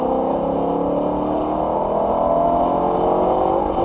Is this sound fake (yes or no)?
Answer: no